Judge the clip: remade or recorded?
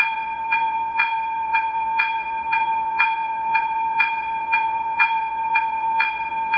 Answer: remade